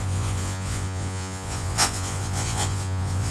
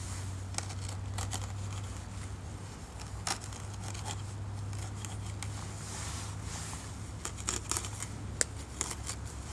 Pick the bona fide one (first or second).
second